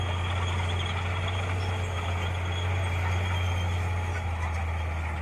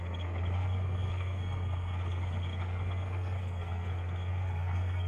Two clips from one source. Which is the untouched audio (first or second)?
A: first